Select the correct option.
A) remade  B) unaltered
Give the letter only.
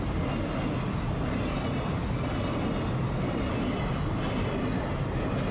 B